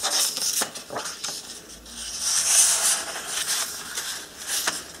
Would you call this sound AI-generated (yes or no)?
no